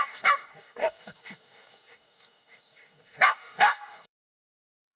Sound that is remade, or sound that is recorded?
remade